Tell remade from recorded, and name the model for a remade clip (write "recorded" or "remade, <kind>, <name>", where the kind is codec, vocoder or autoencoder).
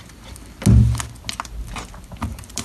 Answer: recorded